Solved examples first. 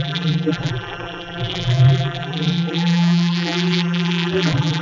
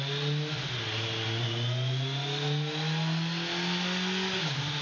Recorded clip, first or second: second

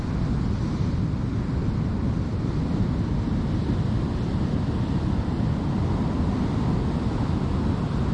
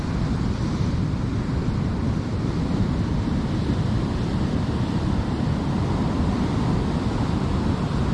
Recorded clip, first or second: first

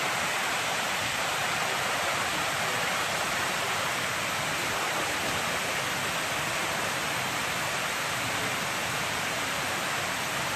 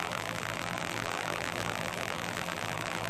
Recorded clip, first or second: first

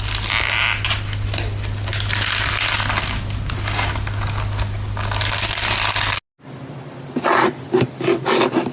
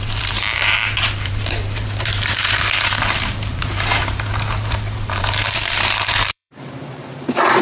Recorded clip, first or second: first